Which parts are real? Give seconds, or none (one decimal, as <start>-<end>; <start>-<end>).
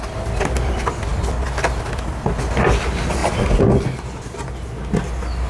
0.0-5.5